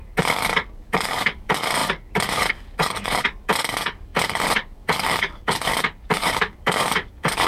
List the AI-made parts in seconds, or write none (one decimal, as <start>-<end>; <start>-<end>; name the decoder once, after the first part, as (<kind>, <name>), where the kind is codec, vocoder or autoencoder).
0.0-7.5 (codec, DAC)